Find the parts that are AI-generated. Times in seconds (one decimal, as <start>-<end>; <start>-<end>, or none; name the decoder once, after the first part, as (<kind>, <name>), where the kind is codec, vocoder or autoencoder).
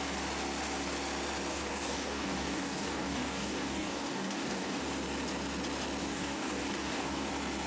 1.5-4.8 (codec, DAC); 6.0-7.3